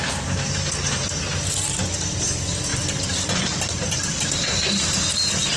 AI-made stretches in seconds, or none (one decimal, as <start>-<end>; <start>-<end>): 2.7-5.1